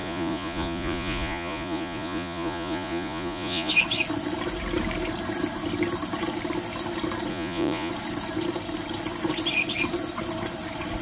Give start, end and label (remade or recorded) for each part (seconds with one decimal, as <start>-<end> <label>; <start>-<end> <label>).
0.0-3.7 remade; 3.7-7.3 recorded; 7.3-7.9 remade; 7.9-11.0 recorded